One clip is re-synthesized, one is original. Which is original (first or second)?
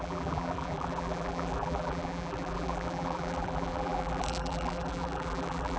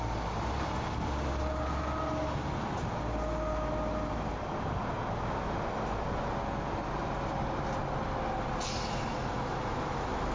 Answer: second